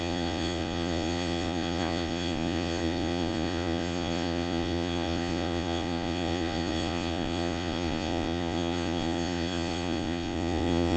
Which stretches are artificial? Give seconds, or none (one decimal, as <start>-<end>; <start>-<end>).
0.0-11.0